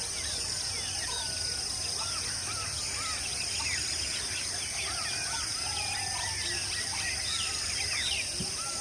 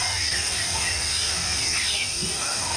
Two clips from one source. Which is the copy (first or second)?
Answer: second